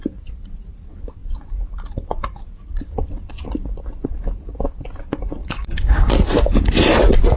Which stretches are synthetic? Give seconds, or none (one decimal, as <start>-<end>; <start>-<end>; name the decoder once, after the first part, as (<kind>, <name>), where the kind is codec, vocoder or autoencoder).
5.4-6.1 (codec, DAC)